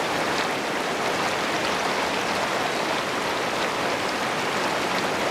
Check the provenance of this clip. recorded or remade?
recorded